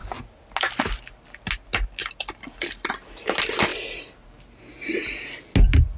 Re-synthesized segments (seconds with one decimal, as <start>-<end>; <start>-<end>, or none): 3.7-5.5

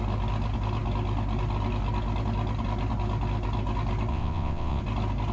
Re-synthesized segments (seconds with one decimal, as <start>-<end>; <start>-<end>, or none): 4.1-4.8

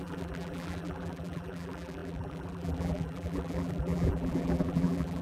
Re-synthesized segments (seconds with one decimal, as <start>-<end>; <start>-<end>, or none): 0.0-5.2

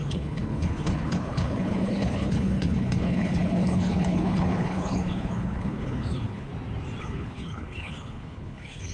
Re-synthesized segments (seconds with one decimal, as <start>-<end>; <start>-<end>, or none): 0.0-6.5; 7.0-8.9

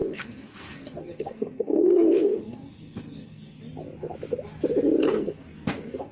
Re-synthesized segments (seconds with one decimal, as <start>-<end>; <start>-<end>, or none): 0.0-3.6; 5.0-6.1

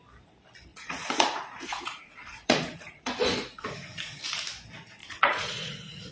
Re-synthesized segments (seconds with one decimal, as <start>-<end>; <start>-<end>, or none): 0.7-4.2; 5.0-6.1

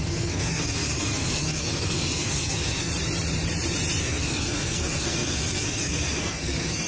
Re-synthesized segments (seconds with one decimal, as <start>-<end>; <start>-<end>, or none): 0.0-2.9; 4.0-6.9